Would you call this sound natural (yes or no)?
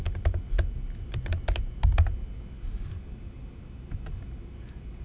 yes